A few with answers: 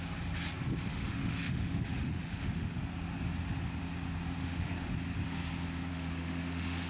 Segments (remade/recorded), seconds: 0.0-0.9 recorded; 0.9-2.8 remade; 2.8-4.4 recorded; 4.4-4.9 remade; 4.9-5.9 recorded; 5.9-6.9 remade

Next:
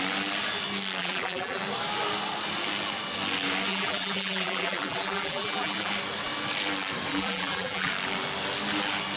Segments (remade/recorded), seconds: 0.0-1.0 recorded; 1.0-1.6 remade; 1.6-3.7 recorded; 3.7-5.9 remade; 5.9-7.1 recorded; 7.1-7.9 remade; 7.9-9.2 recorded

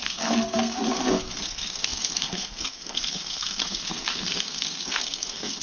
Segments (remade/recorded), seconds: 0.0-5.6 remade

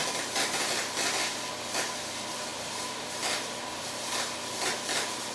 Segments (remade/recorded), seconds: 0.0-5.3 recorded